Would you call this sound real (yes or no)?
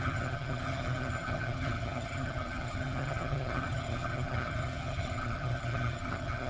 no